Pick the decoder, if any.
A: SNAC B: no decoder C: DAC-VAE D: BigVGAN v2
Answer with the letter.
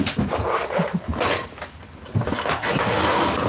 B